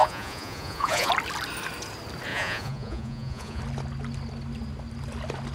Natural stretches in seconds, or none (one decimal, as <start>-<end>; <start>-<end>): 1.1-2.3; 3.6-5.5